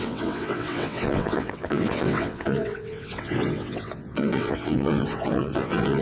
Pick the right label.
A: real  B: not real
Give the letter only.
B